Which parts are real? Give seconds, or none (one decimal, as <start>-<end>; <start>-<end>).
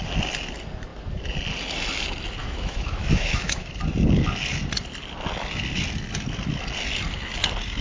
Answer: 0.0-2.4; 3.7-7.8